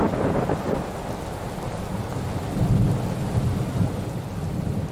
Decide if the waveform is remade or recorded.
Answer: recorded